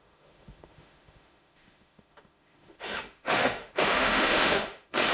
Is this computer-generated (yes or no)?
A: yes